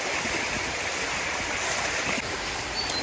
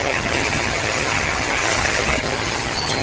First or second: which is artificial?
second